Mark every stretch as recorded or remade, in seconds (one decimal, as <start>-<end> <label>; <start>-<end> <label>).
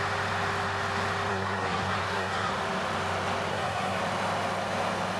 0.0-1.3 recorded; 1.3-2.5 remade; 2.5-3.5 recorded; 3.5-4.0 remade; 4.0-5.2 recorded